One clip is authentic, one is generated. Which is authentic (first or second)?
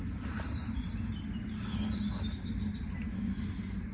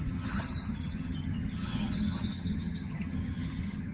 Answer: first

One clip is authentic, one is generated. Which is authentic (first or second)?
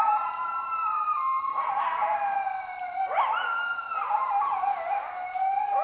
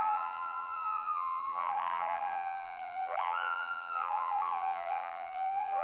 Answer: first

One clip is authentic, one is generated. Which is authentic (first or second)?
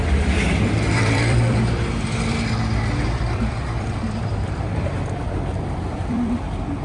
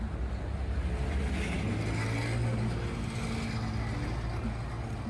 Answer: second